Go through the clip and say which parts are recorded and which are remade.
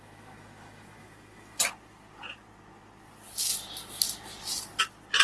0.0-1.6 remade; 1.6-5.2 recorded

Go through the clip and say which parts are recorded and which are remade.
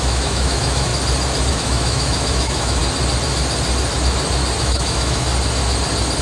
0.0-0.9 remade; 0.9-1.5 recorded; 1.5-2.8 remade; 2.8-4.6 recorded; 4.6-5.3 remade; 5.3-6.2 recorded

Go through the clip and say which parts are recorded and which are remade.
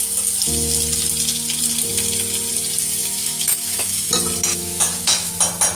0.0-3.0 recorded; 3.0-4.1 remade; 4.1-4.5 recorded; 4.5-5.3 remade; 5.3-5.7 recorded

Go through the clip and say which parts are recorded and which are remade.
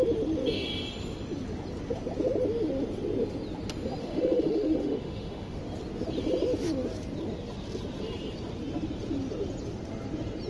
0.0-4.0 recorded; 4.0-5.6 remade; 5.6-10.5 recorded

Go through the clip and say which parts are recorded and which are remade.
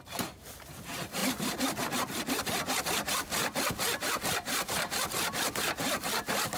0.0-6.6 recorded